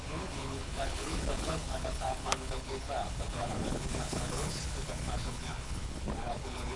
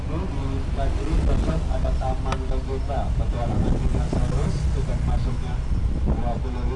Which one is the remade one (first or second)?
first